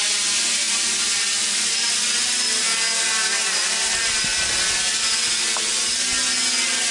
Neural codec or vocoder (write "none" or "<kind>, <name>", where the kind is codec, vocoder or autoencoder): none